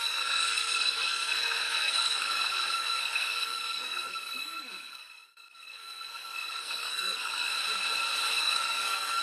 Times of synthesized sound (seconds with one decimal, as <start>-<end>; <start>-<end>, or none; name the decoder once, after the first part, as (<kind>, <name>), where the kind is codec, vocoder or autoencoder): 0.0-7.5 (codec, SNAC); 8.4-9.2